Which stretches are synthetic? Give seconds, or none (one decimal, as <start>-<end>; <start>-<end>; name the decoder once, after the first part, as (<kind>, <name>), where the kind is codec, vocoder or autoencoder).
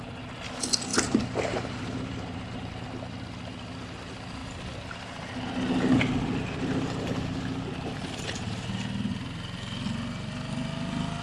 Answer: 0.9-2.7 (vocoder, BigVGAN v2)